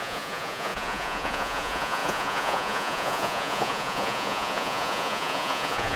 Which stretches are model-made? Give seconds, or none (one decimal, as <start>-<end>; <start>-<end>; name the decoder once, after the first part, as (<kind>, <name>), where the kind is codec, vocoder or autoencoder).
0.0-6.0 (vocoder, Vocos)